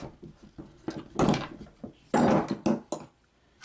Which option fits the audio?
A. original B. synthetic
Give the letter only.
A